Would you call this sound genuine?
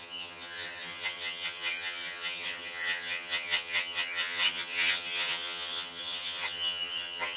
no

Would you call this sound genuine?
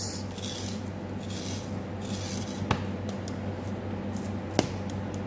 yes